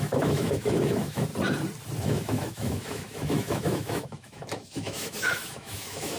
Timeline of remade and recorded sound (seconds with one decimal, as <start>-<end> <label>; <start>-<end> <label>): 0.0-1.3 remade; 1.3-2.0 recorded; 2.0-6.2 remade